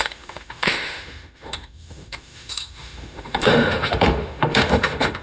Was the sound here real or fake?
fake